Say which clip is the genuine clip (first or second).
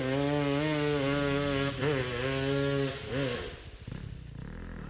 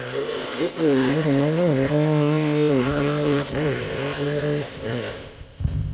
first